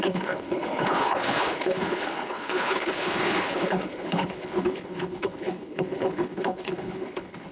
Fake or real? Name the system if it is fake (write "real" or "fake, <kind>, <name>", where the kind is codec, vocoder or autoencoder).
fake, codec, HILCodec